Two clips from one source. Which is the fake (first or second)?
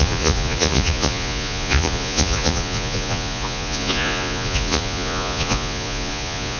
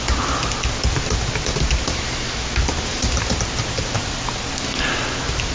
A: first